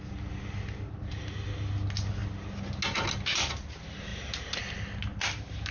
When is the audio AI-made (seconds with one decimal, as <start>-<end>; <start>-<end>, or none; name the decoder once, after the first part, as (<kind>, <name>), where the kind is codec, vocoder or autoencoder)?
4.1-4.6 (vocoder, BigVGAN v2)